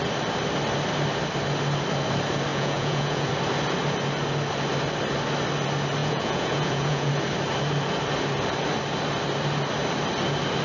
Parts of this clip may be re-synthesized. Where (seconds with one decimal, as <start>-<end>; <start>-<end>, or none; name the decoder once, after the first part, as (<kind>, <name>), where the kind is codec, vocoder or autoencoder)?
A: 2.5-3.3 (vocoder, Vocos); 6.0-7.1